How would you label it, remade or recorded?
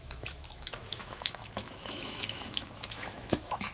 remade